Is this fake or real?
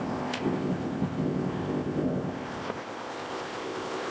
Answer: fake